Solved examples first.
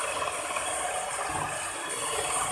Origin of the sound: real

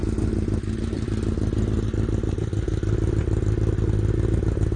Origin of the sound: real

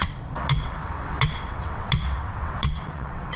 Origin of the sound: fake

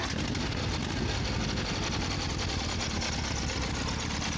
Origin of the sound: real